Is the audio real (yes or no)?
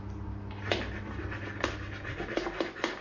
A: yes